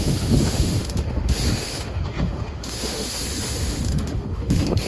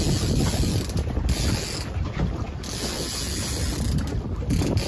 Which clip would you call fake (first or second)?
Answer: first